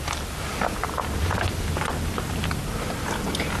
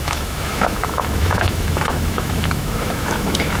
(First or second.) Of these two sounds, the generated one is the second